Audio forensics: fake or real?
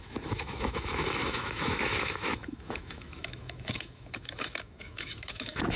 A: fake